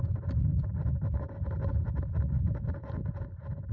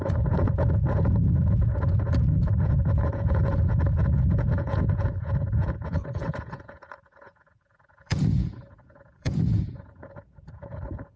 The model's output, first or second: second